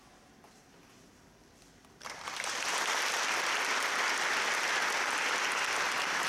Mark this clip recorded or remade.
recorded